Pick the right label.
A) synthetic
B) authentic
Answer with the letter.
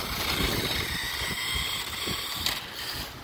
B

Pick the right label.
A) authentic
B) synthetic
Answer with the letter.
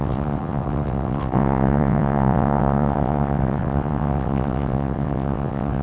B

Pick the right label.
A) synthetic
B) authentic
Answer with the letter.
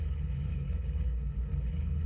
A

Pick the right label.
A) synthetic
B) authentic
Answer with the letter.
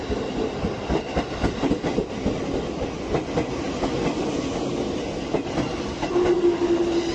B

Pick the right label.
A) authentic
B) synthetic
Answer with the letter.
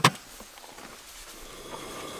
A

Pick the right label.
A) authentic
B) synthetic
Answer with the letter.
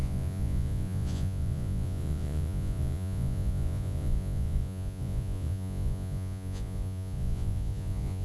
B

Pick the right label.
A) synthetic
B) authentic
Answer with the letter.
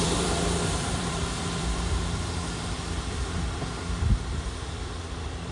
A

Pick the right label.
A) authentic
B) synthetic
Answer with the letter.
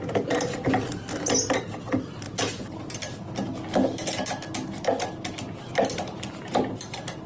A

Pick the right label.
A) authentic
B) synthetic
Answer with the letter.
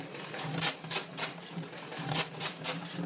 B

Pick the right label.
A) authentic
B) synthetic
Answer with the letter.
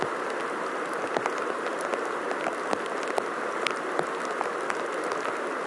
A